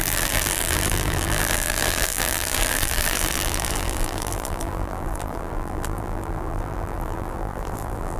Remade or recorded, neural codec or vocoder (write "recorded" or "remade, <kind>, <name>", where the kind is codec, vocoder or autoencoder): remade, vocoder, BigVGAN v2